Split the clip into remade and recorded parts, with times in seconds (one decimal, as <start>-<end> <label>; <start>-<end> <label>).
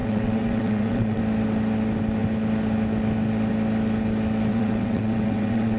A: 0.0-1.2 remade; 1.2-4.5 recorded; 4.5-5.8 remade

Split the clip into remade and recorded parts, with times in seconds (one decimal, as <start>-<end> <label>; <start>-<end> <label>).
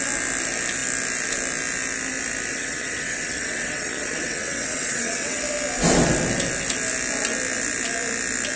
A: 0.0-2.5 recorded; 2.5-5.4 remade; 5.4-8.6 recorded